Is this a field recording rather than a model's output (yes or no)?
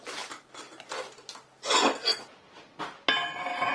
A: yes